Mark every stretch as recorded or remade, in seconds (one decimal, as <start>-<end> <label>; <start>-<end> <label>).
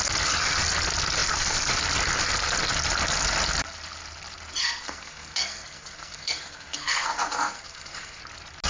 0.0-4.6 recorded; 4.6-8.2 remade; 8.2-8.7 recorded